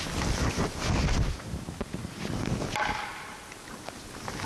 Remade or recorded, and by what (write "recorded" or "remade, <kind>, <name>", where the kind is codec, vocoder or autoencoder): recorded